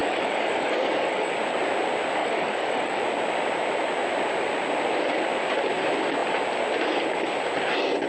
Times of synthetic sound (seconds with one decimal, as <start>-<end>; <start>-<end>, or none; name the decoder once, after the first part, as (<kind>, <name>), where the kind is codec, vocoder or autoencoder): 0.0-1.3 (codec, DAC); 2.2-3.0